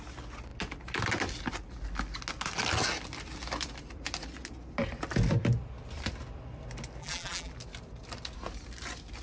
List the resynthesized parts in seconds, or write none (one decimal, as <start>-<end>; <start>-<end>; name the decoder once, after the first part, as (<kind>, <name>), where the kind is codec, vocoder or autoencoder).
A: 7.0-7.5 (vocoder, BigVGAN v2)